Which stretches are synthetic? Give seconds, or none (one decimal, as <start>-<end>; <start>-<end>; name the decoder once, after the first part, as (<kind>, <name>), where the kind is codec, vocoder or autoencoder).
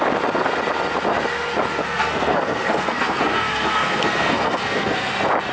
1.8-5.1 (codec, SNAC)